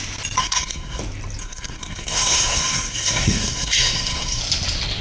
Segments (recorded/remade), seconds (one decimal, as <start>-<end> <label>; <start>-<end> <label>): 0.0-0.4 recorded; 0.4-1.0 remade; 1.0-1.4 recorded; 1.4-4.4 remade; 4.4-5.0 recorded